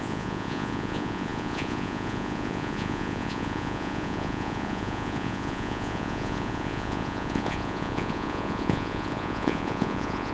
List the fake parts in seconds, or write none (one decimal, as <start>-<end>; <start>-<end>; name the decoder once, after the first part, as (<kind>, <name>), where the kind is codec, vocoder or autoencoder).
0.0-10.3 (vocoder, Vocos)